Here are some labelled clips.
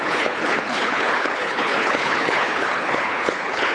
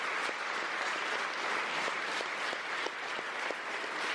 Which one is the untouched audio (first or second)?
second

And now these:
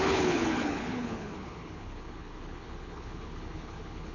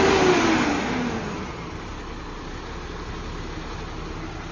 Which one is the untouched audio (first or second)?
second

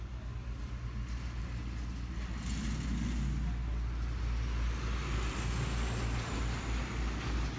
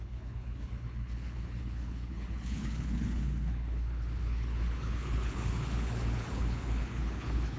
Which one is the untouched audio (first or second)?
first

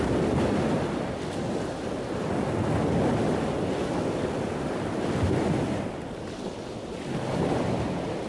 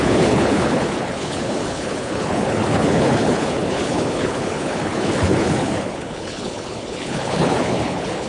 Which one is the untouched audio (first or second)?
first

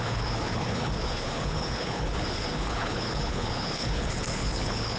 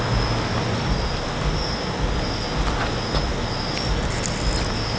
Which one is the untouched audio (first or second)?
second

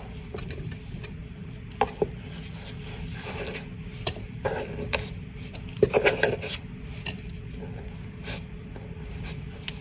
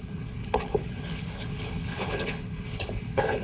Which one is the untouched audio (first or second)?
first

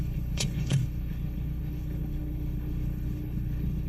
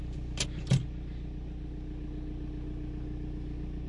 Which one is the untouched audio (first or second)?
second